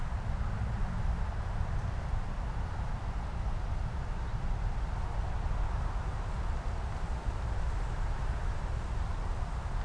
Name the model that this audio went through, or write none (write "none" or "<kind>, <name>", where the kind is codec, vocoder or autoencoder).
none